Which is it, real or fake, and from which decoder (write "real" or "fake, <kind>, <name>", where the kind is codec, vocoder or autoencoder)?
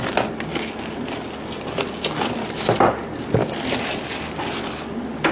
real